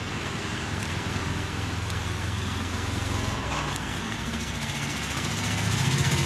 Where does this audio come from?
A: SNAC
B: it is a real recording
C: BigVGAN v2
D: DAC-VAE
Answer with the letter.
A